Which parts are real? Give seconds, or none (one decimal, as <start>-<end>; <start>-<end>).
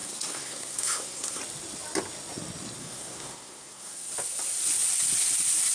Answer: 1.4-2.8; 4.1-5.7